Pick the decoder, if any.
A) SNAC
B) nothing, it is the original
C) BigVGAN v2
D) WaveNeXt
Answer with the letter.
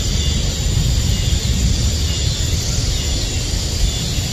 B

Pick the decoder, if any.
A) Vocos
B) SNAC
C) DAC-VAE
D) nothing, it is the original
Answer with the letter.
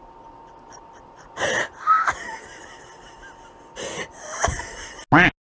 D